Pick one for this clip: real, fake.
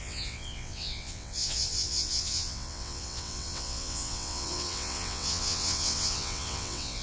fake